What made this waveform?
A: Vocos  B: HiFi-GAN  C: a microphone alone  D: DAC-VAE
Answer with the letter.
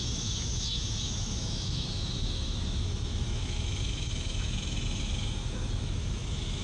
D